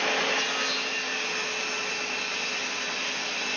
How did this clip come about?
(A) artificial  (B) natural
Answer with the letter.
B